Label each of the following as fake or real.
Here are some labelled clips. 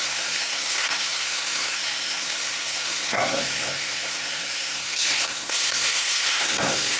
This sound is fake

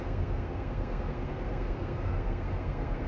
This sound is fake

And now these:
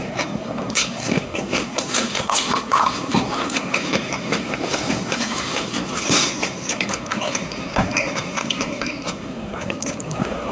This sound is fake